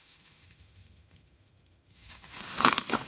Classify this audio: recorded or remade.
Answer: remade